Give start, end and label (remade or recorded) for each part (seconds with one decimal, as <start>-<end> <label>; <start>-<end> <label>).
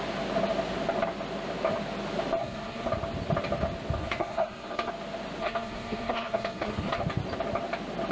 0.0-2.4 recorded; 2.4-2.9 remade; 2.9-4.0 recorded; 4.0-4.9 remade; 4.9-5.4 recorded; 5.4-7.0 remade; 7.0-8.1 recorded